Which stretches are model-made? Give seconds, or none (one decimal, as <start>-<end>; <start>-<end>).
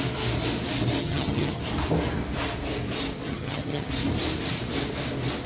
1.0-1.6; 3.3-3.9